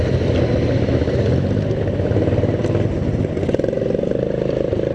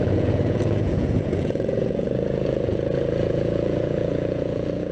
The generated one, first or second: second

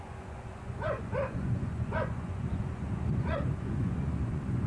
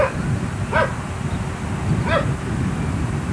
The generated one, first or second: first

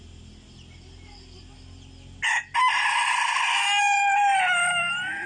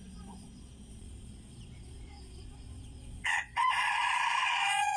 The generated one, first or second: second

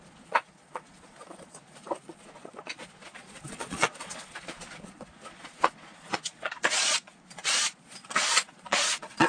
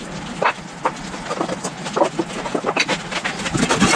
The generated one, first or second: first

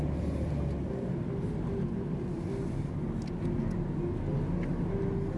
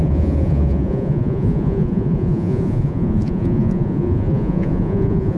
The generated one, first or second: second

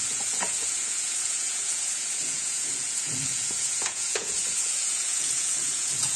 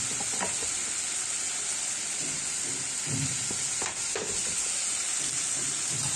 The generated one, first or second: first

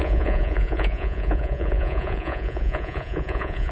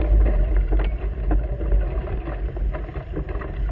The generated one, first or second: first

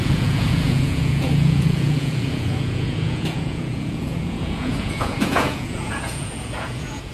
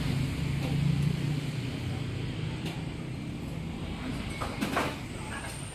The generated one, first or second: first